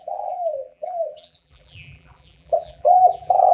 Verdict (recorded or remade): remade